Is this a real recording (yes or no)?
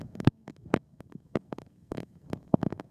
no